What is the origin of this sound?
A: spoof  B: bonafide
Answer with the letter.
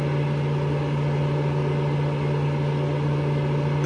B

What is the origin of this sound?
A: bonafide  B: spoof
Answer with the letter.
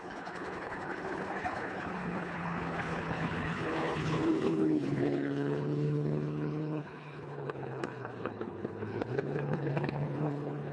B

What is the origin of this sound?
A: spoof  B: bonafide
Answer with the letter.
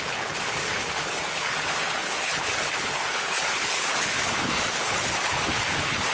A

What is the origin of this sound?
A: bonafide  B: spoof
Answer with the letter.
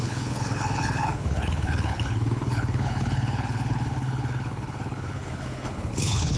B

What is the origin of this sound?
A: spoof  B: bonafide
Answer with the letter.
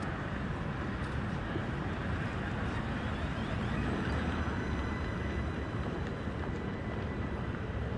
B